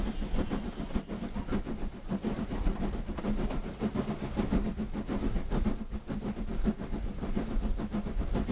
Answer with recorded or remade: recorded